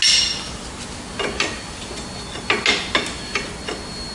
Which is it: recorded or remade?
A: recorded